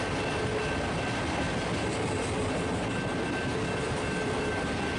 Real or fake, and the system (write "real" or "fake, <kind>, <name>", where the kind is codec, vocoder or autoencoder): real